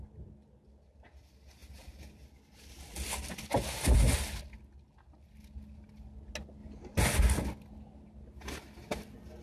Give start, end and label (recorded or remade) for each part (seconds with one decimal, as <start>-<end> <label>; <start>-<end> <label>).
0.0-9.4 recorded